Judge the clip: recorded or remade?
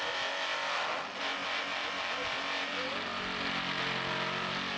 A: recorded